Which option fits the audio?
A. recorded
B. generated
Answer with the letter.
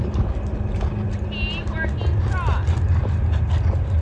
A